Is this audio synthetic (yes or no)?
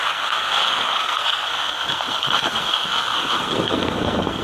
yes